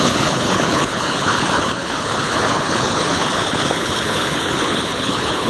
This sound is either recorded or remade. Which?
remade